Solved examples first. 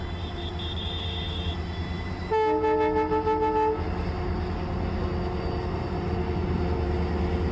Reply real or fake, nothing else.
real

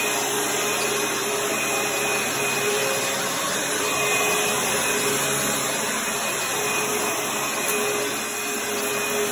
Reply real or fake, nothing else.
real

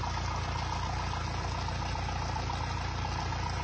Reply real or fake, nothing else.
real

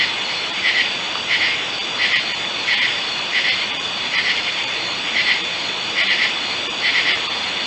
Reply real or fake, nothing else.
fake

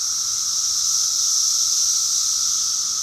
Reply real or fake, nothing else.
real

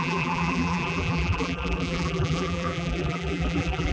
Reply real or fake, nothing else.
fake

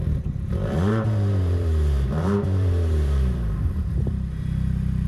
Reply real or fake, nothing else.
fake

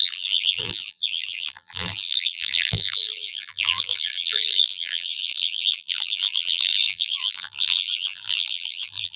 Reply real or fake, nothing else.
fake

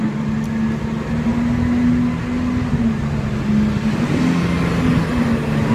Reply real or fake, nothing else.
real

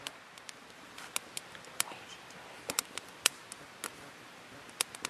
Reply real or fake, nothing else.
real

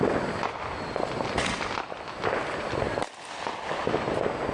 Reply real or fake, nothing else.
real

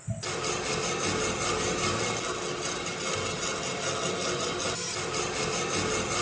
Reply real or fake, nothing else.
real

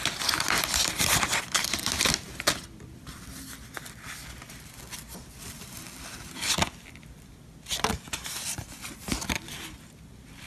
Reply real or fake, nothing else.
real